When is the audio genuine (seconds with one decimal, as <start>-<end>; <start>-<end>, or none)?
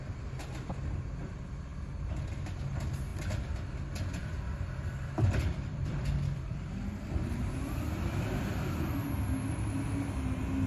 0.0-4.2; 9.2-10.7